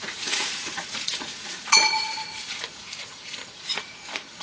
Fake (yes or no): yes